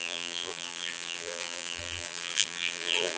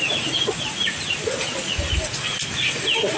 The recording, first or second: second